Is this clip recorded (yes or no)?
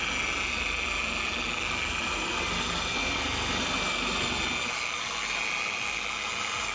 yes